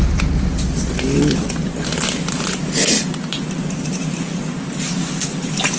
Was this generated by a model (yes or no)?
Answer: no